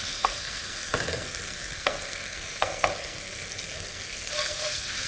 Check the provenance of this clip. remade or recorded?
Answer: remade